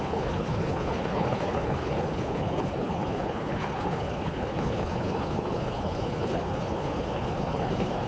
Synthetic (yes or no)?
yes